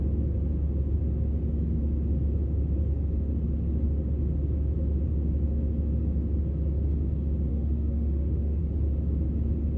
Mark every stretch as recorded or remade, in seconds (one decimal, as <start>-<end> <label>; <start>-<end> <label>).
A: 0.0-7.5 recorded; 7.5-8.6 remade; 8.6-9.8 recorded